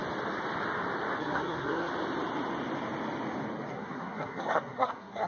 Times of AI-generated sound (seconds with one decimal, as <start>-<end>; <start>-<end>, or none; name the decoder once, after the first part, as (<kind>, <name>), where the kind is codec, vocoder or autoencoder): 1.2-1.9 (codec, SNAC); 3.7-5.3